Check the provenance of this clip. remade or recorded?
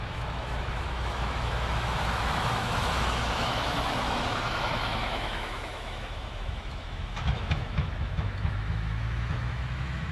remade